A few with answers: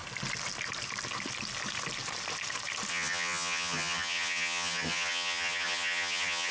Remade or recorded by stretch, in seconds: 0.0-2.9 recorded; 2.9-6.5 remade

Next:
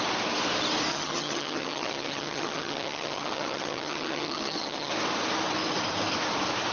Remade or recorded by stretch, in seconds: 0.0-0.9 recorded; 0.9-4.9 remade; 4.9-6.7 recorded